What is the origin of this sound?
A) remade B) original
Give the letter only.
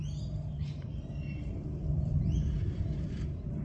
A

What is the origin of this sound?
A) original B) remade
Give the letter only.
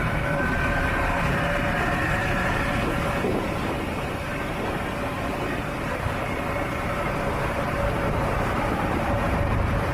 B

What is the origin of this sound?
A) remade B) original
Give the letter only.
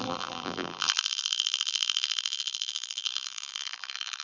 A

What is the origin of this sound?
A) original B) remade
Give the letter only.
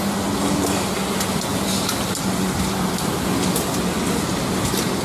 A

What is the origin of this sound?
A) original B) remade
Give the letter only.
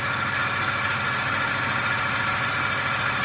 A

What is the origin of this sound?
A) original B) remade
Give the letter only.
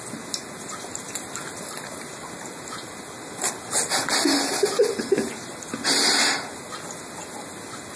A